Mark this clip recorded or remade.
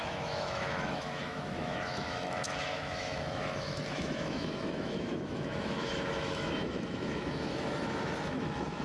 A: remade